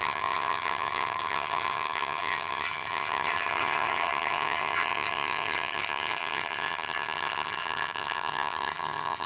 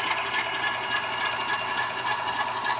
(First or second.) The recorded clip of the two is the second